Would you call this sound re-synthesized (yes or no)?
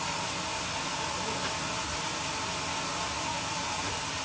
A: no